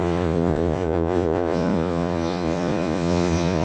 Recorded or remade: remade